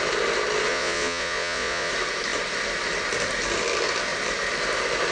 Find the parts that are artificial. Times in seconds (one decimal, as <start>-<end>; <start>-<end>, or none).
0.7-1.9